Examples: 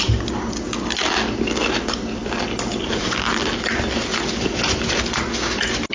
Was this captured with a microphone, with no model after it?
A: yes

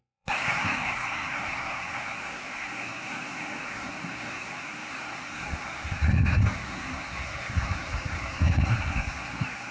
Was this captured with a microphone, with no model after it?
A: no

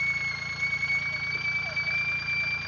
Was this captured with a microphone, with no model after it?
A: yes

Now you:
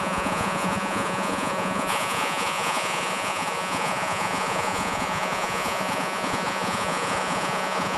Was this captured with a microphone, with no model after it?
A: no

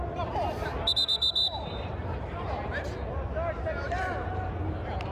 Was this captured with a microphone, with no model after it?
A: yes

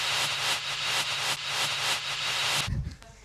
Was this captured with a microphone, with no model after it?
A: yes